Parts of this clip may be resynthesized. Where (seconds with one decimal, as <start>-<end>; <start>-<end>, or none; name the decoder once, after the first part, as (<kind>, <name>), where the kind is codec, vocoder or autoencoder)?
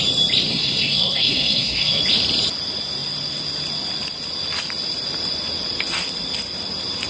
0.5-2.0 (codec, SNAC)